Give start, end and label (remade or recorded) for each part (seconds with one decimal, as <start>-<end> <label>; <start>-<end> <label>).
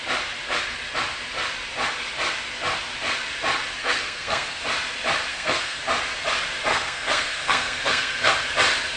0.0-3.8 recorded; 3.8-4.6 remade; 4.6-5.3 recorded; 5.3-5.8 remade; 5.8-6.7 recorded; 6.7-8.3 remade; 8.3-9.0 recorded